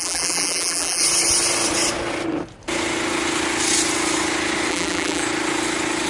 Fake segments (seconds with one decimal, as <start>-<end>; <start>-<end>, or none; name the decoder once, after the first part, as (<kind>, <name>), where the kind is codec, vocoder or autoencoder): 0.0-1.0 (vocoder, BigVGAN v2); 4.7-5.2